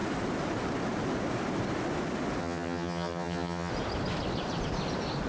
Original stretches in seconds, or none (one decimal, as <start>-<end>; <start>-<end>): 0.0-2.4; 3.7-5.3